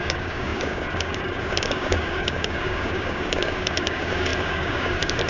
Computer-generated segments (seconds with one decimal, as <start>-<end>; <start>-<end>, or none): 0.0-5.3